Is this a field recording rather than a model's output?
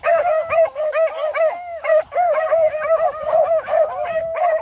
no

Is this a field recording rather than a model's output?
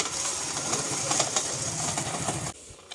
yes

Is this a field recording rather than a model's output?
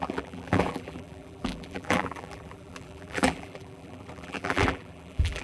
no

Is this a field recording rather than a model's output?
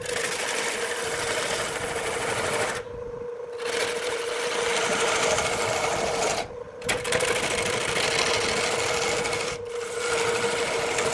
yes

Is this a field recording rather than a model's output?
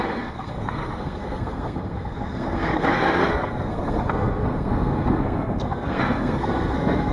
no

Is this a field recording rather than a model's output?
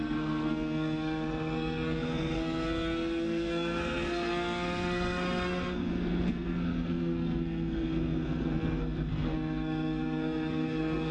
no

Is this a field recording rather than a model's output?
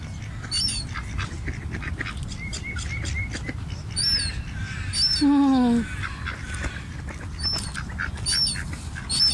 yes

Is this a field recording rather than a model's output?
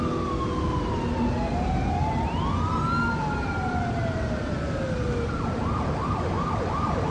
yes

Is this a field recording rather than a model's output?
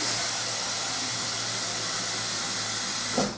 yes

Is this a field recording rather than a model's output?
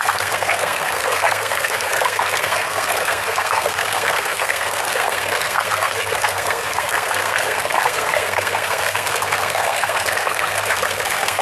no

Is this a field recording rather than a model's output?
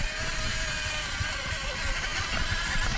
yes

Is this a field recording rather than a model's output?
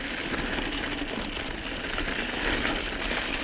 yes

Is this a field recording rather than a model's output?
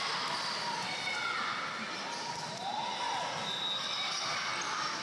yes